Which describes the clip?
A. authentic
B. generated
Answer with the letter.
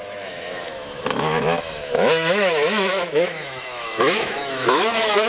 B